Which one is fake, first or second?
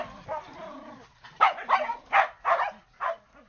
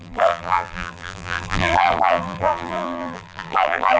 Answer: second